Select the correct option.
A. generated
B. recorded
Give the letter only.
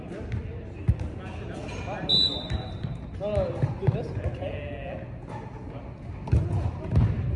B